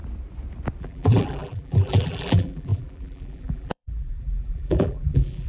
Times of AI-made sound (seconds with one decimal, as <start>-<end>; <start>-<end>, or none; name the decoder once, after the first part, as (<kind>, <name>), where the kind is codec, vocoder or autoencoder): 0.8-5.5 (vocoder, BigVGAN v2)